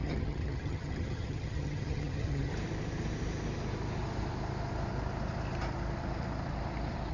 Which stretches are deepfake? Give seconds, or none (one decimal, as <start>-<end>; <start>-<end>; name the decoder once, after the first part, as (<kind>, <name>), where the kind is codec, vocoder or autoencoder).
0.0-2.5 (vocoder, HiFi-GAN)